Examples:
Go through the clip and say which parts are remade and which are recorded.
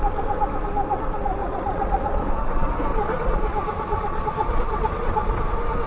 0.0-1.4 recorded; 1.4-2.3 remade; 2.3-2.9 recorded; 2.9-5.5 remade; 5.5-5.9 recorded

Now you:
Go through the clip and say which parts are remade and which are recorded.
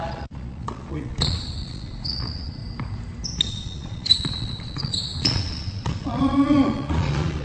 0.0-2.6 remade; 2.6-3.5 recorded; 3.5-7.4 remade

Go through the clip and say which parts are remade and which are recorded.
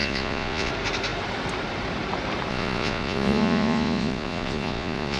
0.0-0.7 remade; 0.7-2.5 recorded; 2.5-5.2 remade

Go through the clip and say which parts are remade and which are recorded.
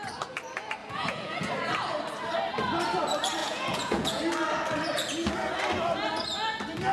0.0-0.8 recorded; 0.8-1.5 remade; 1.5-3.4 recorded; 3.4-4.2 remade; 4.2-6.9 recorded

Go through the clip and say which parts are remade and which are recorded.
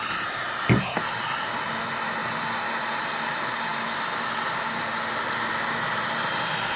0.0-6.8 recorded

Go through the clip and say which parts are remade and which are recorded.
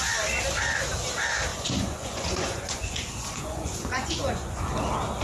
0.0-1.5 recorded; 1.5-4.6 remade; 4.6-5.2 recorded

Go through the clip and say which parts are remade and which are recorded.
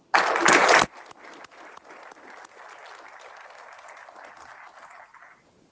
0.0-5.7 recorded